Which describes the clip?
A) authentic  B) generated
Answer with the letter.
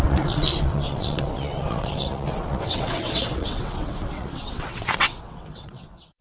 B